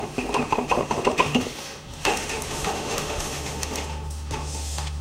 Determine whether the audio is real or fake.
fake